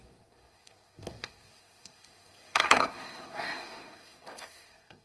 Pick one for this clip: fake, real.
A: fake